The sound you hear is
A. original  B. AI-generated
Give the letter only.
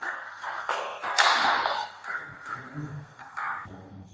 B